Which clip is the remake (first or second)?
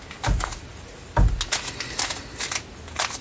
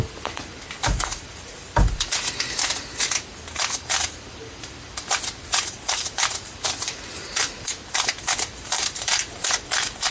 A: second